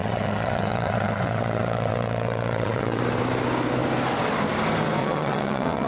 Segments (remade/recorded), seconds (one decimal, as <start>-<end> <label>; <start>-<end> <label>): 0.0-3.0 remade; 3.0-5.0 recorded; 5.0-5.9 remade